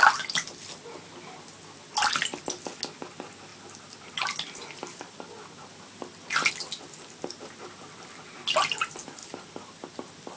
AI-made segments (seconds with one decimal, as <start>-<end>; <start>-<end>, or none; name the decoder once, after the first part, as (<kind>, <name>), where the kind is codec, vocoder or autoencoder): none